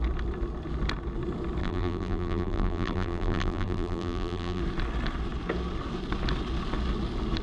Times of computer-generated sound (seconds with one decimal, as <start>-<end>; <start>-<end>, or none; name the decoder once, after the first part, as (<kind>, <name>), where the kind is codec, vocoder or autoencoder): 1.6-4.6 (vocoder, BigVGAN v2)